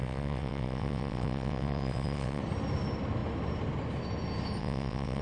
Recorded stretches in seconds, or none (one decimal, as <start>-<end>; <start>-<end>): 2.4-4.6